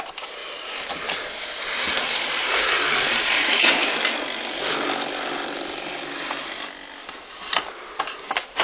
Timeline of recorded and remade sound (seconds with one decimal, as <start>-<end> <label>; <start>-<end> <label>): 0.0-3.8 remade; 3.8-8.0 recorded; 8.0-8.6 remade